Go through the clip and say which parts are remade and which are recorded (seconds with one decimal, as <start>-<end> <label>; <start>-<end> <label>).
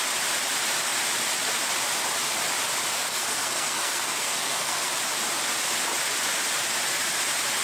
0.0-3.0 recorded; 3.0-4.9 remade; 4.9-7.6 recorded